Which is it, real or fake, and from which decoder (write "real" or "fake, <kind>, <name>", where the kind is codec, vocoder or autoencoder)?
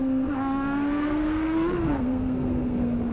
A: fake, codec, SNAC